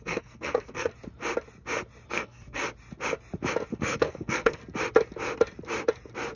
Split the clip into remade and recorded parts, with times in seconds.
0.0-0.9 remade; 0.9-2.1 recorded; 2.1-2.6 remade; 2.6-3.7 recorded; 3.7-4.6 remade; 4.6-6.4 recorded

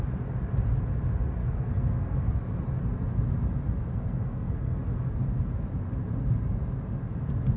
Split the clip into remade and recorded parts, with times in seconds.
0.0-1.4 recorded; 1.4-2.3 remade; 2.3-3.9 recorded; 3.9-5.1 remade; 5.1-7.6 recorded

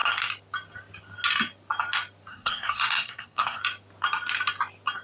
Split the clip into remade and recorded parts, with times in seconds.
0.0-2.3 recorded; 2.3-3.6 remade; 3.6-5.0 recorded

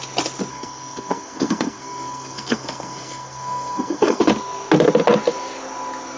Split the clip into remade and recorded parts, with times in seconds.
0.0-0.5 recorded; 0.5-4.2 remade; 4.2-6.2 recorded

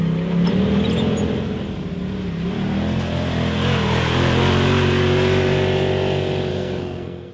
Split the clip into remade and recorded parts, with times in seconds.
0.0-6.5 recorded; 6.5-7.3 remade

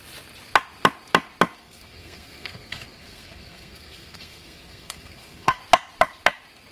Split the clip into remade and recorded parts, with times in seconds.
0.0-1.6 recorded; 1.6-5.6 remade; 5.6-6.7 recorded